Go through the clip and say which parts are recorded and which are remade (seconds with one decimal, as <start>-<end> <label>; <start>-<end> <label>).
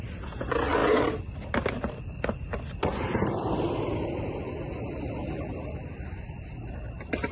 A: 0.0-7.3 recorded